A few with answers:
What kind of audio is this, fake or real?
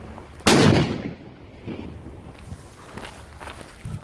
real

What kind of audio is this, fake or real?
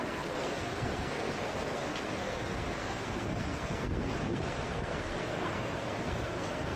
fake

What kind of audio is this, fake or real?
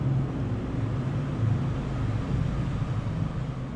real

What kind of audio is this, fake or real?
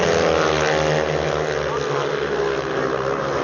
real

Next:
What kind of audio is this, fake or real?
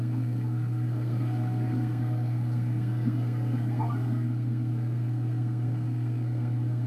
fake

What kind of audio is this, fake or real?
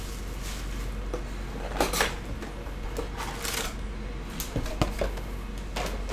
real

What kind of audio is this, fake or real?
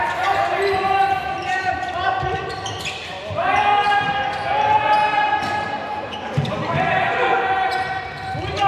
real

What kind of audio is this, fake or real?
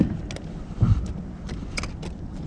real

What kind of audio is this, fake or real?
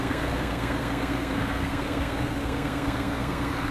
fake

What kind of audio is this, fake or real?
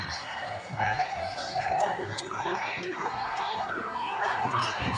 fake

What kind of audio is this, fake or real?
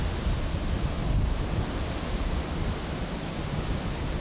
real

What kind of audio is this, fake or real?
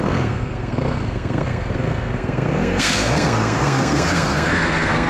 fake